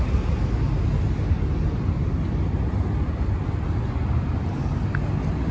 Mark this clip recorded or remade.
recorded